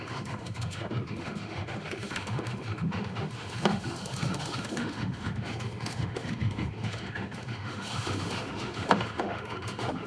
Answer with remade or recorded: remade